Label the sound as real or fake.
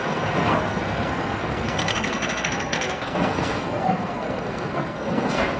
fake